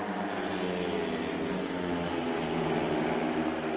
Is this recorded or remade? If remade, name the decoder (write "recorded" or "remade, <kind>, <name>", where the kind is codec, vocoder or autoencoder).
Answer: recorded